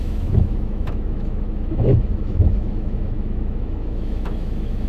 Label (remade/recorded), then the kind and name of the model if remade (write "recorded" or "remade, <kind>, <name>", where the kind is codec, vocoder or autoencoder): remade, autoencoder, DAC-VAE